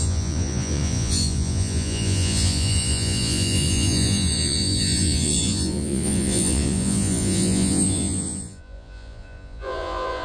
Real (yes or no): no